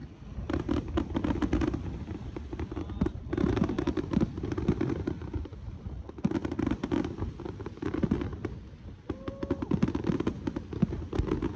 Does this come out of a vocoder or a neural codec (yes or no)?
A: no